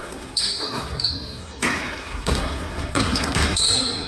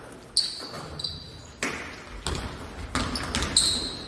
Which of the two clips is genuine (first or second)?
second